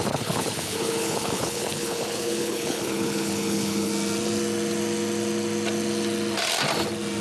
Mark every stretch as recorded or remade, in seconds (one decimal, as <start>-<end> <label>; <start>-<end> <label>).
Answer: 0.0-3.9 remade; 3.9-7.2 recorded